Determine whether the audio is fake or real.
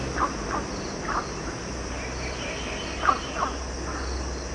real